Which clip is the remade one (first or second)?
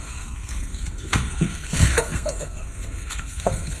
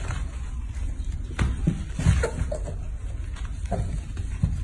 first